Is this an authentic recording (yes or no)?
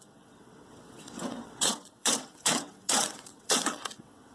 no